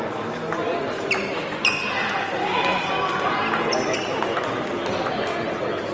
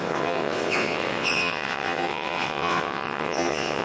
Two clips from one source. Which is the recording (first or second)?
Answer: first